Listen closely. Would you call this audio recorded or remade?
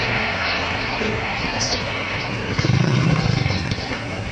remade